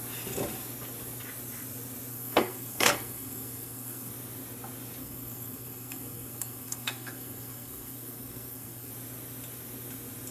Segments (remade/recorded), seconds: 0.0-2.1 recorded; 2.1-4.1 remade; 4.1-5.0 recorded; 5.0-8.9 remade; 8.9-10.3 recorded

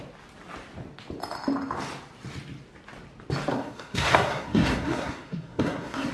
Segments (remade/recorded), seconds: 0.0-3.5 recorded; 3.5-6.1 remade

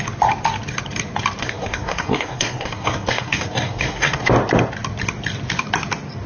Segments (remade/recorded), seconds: 0.0-1.4 recorded; 1.4-4.3 remade; 4.3-6.3 recorded

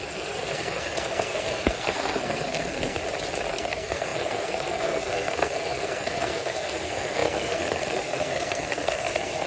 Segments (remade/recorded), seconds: 0.0-3.0 remade; 3.0-3.5 recorded; 3.5-9.5 remade